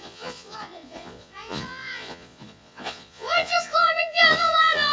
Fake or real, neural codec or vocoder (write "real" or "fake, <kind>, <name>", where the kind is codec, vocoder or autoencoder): fake, vocoder, Vocos